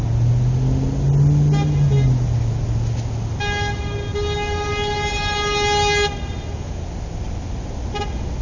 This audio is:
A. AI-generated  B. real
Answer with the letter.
B